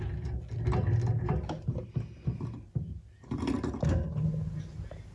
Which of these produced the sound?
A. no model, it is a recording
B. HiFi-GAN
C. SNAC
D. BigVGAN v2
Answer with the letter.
A